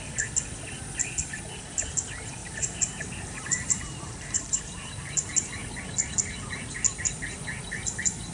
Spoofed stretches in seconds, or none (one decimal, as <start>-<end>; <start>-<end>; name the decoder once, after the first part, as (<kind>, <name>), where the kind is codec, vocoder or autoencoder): 2.4-4.6 (vocoder, BigVGAN v2)